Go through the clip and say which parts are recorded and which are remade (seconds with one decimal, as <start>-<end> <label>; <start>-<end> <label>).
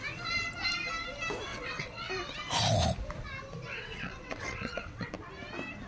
0.0-1.5 recorded; 1.5-2.1 remade; 2.1-3.7 recorded; 3.7-5.1 remade; 5.1-5.9 recorded